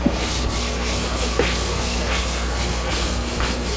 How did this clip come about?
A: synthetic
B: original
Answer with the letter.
A